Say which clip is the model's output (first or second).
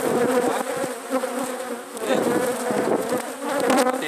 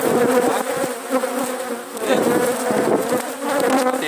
first